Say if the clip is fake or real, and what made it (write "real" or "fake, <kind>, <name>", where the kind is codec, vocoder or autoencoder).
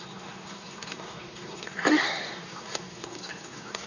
fake, codec, SNAC